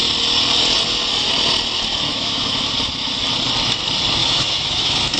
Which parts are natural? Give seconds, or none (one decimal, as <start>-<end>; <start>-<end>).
0.0-2.1; 2.7-4.2